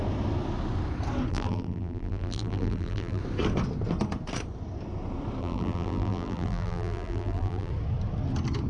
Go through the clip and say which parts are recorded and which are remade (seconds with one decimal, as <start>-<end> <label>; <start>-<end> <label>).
0.0-1.3 recorded; 1.3-3.2 remade; 3.2-5.4 recorded; 5.4-7.7 remade; 7.7-8.7 recorded